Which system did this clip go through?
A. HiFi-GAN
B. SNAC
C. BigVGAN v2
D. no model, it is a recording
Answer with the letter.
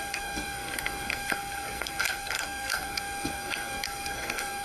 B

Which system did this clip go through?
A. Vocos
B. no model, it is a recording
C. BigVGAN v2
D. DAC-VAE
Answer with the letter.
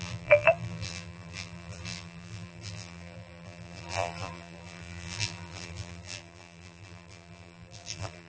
C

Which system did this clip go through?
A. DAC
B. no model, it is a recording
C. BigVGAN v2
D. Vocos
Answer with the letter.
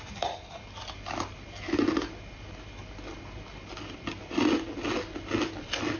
B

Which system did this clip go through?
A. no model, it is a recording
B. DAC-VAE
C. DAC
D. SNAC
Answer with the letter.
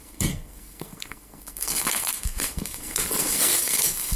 D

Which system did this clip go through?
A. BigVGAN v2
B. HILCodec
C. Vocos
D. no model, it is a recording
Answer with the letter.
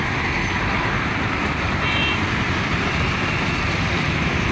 A